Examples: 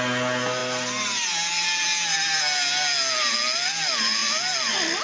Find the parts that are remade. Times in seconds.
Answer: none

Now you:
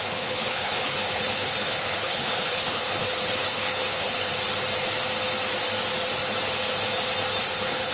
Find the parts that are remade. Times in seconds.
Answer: 0.0-4.3; 7.4-7.9

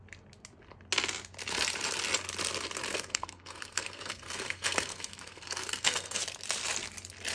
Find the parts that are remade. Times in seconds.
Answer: 2.9-6.2

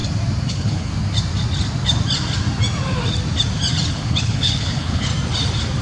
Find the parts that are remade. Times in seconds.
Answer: 0.5-0.9; 3.9-5.1